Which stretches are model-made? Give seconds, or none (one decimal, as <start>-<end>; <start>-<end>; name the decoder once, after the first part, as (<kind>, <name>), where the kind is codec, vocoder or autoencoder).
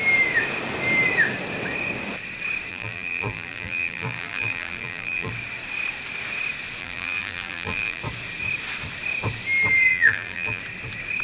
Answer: 2.7-5.3 (vocoder, BigVGAN v2); 6.8-8.0; 9.9-10.6